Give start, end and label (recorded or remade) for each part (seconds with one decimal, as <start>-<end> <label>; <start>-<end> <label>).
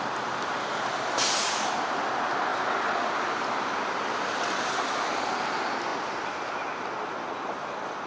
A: 0.0-5.9 recorded; 5.9-6.7 remade; 6.7-8.1 recorded